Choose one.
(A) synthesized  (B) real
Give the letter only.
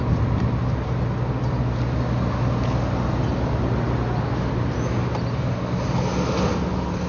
B